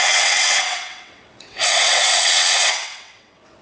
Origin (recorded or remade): remade